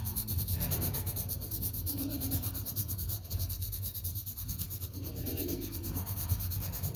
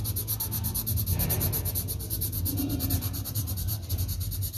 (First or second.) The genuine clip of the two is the second